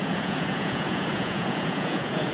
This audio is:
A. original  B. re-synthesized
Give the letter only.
B